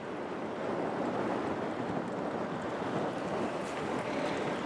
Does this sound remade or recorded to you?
recorded